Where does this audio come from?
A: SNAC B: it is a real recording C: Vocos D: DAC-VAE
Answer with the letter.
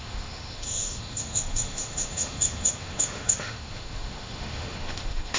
D